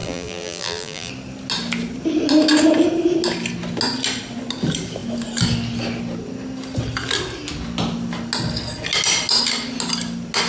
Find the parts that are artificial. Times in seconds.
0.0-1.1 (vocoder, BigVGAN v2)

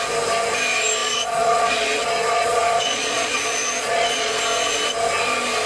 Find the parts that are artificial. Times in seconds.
1.0-4.4 (vocoder, Vocos)

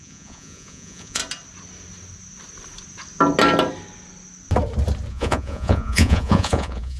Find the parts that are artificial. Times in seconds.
0.0-1.2 (vocoder, Vocos); 5.1-7.0

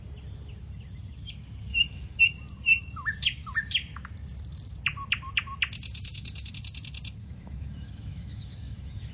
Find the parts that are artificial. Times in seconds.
1.7-2.2 (autoencoder, DAC-VAE); 5.9-6.5; 7.2-9.1

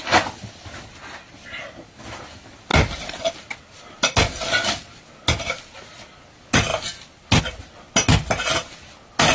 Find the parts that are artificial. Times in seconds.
none